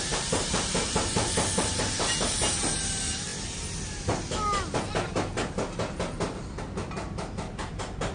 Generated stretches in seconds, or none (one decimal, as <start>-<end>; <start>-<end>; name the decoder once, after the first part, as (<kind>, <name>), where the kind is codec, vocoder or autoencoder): 0.0-3.3 (vocoder, BigVGAN v2); 6.6-8.1